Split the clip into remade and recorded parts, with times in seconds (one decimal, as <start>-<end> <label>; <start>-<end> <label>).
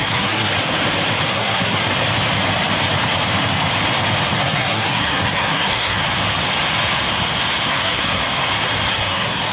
0.0-0.5 remade; 0.5-1.3 recorded; 1.3-1.8 remade; 1.8-4.4 recorded; 4.4-6.0 remade; 6.0-7.7 recorded; 7.7-8.2 remade; 8.2-8.9 recorded; 8.9-9.5 remade